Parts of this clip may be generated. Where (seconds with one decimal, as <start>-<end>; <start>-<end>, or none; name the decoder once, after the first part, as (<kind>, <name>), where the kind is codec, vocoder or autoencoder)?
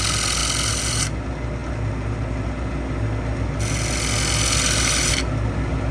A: none